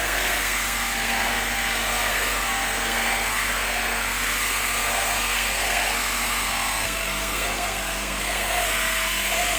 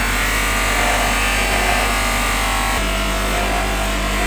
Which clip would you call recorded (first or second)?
second